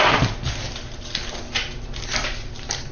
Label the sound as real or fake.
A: real